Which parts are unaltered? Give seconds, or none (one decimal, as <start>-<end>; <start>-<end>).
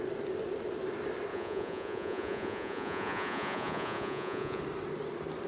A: 0.0-1.3; 4.6-5.5